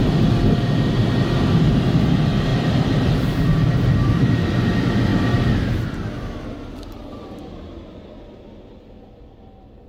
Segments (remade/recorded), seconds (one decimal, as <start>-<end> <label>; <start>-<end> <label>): 0.0-2.5 recorded; 2.5-4.2 remade; 4.2-9.9 recorded